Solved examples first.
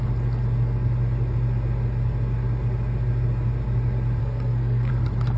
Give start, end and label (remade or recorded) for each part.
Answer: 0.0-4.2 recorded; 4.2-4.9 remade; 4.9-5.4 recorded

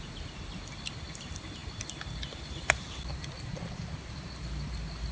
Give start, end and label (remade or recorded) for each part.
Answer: 0.0-5.1 recorded

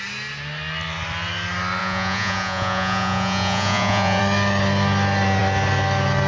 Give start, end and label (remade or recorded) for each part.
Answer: 0.0-1.8 recorded; 1.8-4.2 remade; 4.2-6.3 recorded

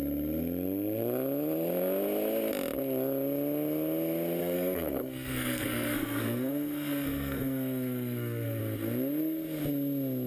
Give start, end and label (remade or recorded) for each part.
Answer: 0.0-4.4 recorded; 4.4-8.6 remade; 8.6-10.3 recorded

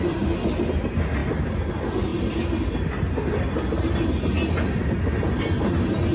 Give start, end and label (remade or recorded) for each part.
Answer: 0.0-6.1 recorded

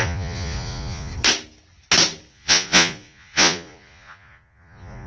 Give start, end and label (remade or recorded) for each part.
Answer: 0.0-1.1 remade; 1.1-2.3 recorded; 2.3-5.1 remade

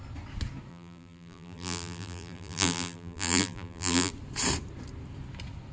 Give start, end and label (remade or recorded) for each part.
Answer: 0.0-0.7 recorded; 0.7-4.1 remade; 4.1-5.7 recorded

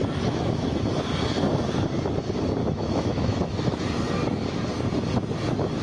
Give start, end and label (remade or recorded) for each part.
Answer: 0.0-2.6 recorded; 2.6-3.8 remade; 3.8-5.8 recorded